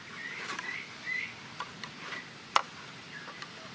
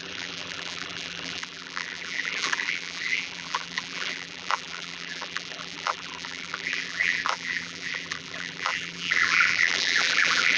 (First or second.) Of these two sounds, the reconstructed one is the second